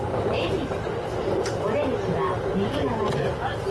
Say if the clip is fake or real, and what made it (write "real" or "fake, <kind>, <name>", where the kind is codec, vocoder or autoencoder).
real